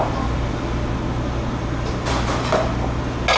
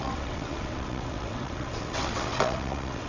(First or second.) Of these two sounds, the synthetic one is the second